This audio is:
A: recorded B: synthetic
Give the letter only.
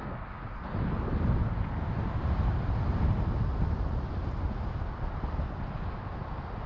A